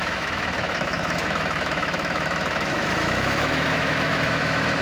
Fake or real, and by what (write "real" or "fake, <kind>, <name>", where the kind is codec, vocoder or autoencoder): fake, autoencoder, DAC-VAE